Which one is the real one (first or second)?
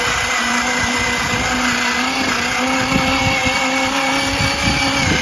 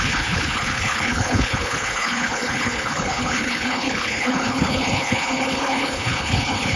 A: first